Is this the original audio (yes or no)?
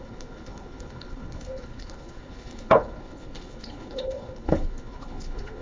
no